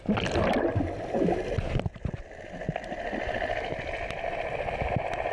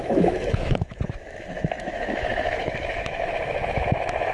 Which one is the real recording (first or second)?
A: first